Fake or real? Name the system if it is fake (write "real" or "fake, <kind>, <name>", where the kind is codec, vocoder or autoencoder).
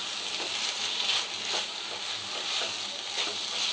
real